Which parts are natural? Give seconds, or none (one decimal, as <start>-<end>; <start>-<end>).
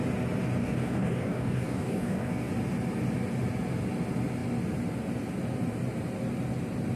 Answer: 0.0-0.6; 2.5-7.0